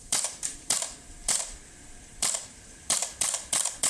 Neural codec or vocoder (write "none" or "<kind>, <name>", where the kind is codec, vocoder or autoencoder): vocoder, BigVGAN v2